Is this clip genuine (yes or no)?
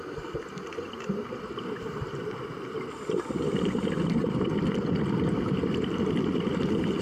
no